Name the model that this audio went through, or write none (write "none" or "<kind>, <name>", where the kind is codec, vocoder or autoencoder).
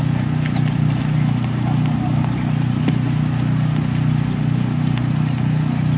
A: none